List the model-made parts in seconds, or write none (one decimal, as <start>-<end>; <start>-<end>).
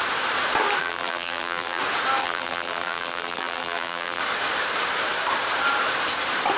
0.8-1.8; 2.2-4.2